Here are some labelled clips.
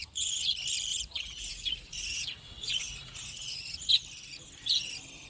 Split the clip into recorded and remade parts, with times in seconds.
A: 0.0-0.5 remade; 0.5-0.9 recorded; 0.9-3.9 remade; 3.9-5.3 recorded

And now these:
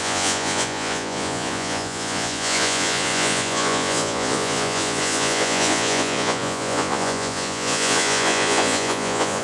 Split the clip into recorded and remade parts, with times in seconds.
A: 0.0-9.4 remade

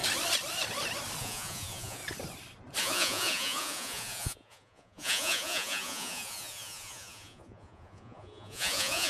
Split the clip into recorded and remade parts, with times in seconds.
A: 0.0-1.2 recorded; 1.2-2.0 remade; 2.0-2.8 recorded; 2.8-9.1 remade

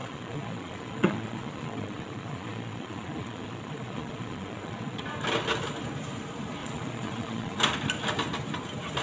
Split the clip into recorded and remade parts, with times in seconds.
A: 0.0-5.0 remade; 5.0-6.6 recorded; 6.6-7.6 remade; 7.6-9.0 recorded

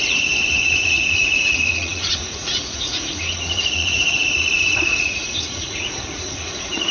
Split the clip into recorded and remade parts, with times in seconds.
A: 0.0-6.9 remade

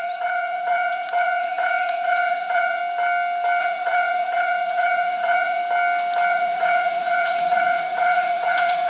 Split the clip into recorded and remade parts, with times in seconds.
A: 0.0-2.8 remade; 2.8-3.6 recorded; 3.6-5.6 remade; 5.6-6.3 recorded; 6.3-8.9 remade

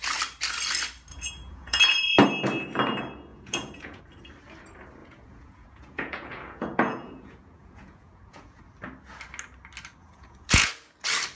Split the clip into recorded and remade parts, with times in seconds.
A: 0.0-1.1 recorded; 1.1-1.8 remade; 1.8-3.3 recorded; 3.3-4.0 remade; 4.0-5.0 recorded; 5.0-8.6 remade; 8.6-10.0 recorded; 10.0-10.7 remade; 10.7-11.4 recorded